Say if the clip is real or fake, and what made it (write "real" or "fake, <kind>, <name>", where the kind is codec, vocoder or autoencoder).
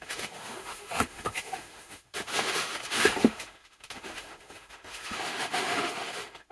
fake, autoencoder, DAC-VAE